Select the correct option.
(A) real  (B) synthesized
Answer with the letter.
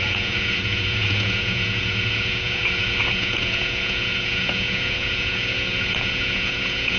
B